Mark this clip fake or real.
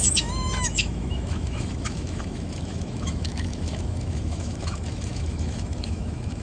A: fake